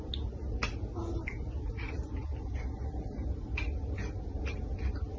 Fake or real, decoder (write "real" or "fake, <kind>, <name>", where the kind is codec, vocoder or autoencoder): real